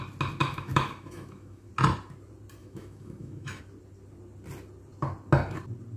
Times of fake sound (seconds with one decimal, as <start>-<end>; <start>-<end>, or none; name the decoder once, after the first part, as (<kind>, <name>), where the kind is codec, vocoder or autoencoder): 0.4-1.7 (autoencoder, DAC-VAE); 2.6-3.6